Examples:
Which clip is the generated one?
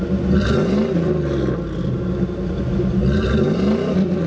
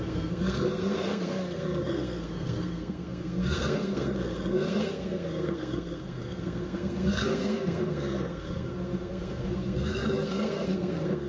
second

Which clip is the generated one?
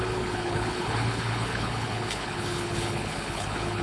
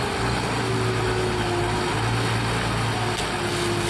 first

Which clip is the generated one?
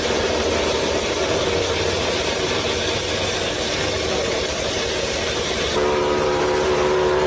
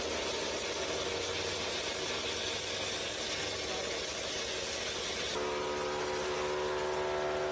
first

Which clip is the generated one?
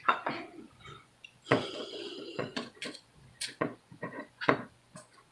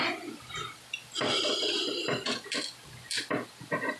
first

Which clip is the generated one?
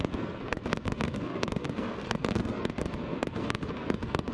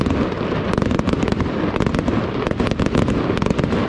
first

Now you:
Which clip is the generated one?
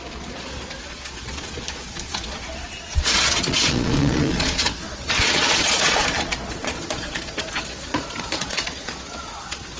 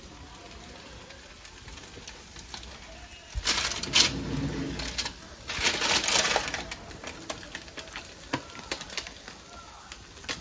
first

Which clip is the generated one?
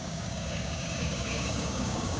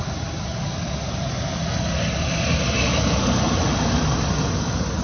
first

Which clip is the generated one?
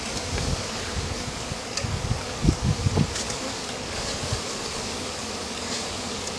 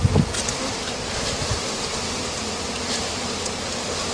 first